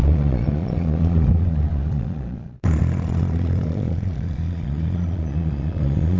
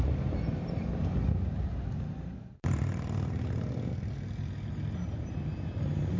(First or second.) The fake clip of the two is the first